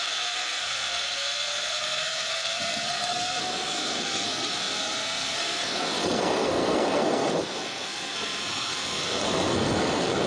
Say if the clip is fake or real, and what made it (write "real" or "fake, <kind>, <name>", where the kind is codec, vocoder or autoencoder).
fake, codec, SNAC